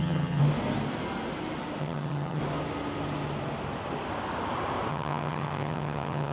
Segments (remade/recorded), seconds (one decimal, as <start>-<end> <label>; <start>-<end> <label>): 0.0-0.4 remade; 0.4-1.8 recorded; 1.8-2.4 remade; 2.4-4.9 recorded; 4.9-6.3 remade